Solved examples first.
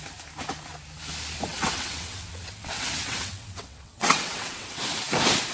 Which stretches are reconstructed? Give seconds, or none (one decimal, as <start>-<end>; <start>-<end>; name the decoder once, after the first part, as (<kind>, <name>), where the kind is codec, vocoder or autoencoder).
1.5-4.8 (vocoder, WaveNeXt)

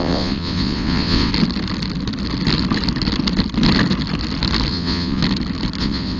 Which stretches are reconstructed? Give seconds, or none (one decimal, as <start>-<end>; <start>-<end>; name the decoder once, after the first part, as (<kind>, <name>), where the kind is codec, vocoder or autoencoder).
0.0-1.3 (vocoder, WaveNeXt); 4.7-5.2; 5.8-6.2

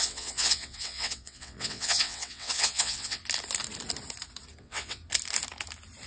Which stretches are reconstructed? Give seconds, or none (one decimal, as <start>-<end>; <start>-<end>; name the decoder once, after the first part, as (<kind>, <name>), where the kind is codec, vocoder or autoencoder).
0.0-3.2 (vocoder, WaveNeXt); 4.6-5.0

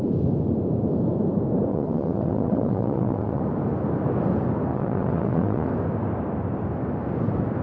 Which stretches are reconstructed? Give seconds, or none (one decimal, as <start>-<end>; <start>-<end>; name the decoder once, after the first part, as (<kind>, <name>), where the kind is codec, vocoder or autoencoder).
1.7-3.4 (vocoder, WaveNeXt); 4.7-5.7

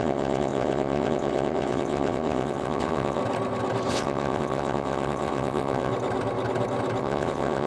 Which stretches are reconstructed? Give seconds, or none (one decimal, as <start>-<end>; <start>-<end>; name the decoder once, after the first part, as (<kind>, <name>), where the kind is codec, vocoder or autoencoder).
0.0-3.2 (vocoder, WaveNeXt); 3.9-5.9; 7.0-7.7